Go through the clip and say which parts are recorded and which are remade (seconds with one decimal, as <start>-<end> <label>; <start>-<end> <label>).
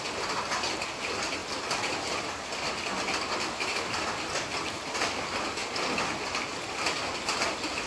0.0-7.9 recorded